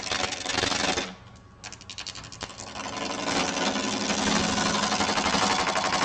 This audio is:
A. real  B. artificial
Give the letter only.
A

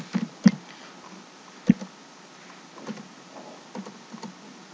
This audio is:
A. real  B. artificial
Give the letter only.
A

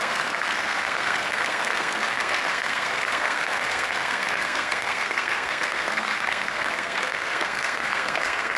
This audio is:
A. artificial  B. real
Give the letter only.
A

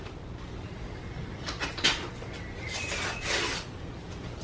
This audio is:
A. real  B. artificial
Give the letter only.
A